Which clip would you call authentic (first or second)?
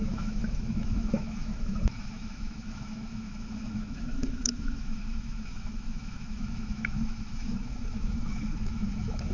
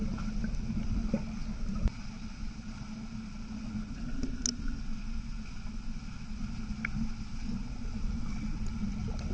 second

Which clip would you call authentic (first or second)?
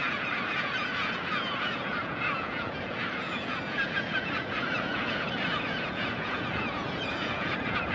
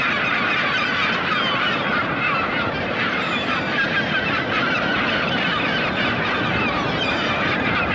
second